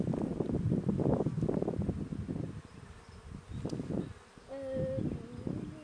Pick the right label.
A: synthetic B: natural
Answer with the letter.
B